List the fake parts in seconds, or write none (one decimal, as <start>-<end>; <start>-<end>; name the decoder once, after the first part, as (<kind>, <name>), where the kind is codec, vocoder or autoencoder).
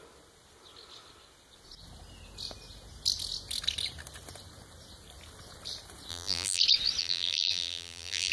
6.1-6.6 (vocoder, BigVGAN v2); 7.0-8.3